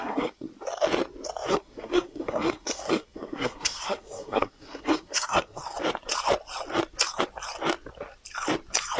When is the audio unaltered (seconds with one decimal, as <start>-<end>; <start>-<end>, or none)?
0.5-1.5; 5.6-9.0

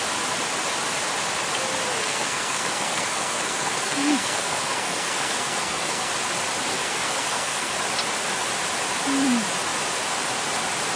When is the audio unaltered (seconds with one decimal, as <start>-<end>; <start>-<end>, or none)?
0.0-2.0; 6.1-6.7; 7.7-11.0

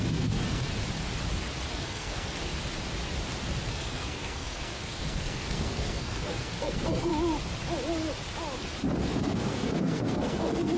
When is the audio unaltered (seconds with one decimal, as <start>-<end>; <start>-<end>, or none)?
0.7-1.7; 2.5-3.7; 7.1-9.2

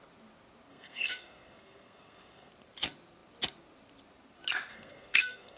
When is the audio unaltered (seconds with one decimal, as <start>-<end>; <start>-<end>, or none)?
0.0-0.7; 2.5-4.7

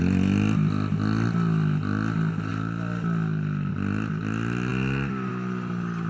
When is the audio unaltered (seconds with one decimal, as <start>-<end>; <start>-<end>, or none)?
0.0-6.1